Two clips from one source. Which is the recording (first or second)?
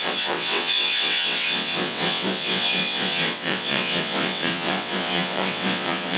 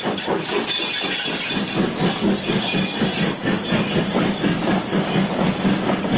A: second